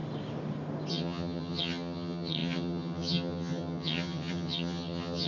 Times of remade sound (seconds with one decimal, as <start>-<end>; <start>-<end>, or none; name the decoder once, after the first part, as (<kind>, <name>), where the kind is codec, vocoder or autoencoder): 0.9-5.3 (vocoder, HiFi-GAN)